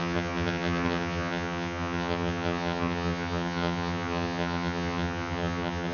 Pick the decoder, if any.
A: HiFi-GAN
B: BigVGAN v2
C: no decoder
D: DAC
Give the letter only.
A